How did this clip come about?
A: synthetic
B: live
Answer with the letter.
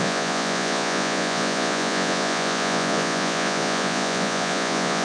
A